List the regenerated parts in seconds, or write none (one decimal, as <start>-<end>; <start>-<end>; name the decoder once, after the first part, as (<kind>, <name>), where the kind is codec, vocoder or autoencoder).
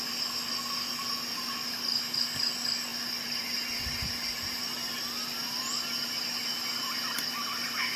none